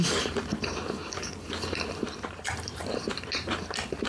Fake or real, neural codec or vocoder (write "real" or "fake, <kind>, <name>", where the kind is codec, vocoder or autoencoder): fake, vocoder, BigVGAN v2